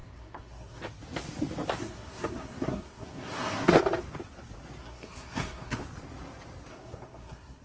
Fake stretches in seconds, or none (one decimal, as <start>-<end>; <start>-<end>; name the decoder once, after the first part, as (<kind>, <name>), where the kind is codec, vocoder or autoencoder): 0.0-0.8 (codec, SNAC); 1.8-3.8; 4.8-5.8; 6.7-7.6